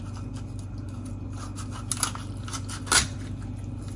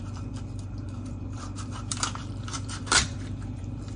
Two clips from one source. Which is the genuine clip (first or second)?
first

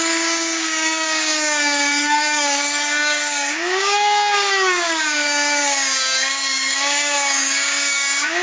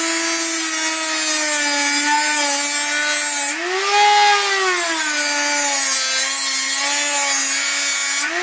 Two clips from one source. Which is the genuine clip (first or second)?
second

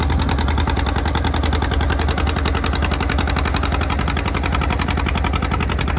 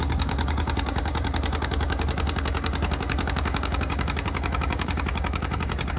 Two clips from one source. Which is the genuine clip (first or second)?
first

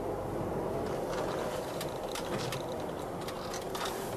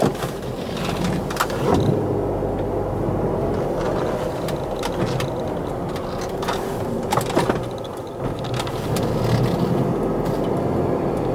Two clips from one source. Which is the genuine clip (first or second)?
second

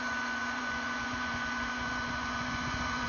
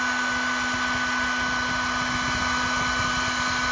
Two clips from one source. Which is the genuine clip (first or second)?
second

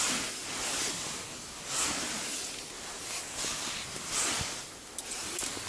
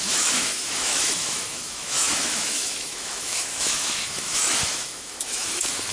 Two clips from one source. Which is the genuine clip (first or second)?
first